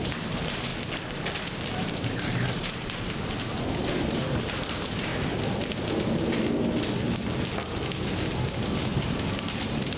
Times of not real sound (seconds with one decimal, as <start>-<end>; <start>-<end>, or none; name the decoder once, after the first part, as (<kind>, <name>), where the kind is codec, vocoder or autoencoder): 0.0-0.7 (vocoder, BigVGAN v2); 1.7-5.1; 8.6-10.0